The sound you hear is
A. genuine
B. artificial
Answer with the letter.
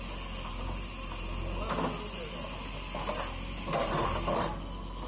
A